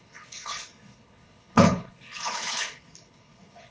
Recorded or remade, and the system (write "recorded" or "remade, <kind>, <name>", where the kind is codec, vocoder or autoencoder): remade, codec, HILCodec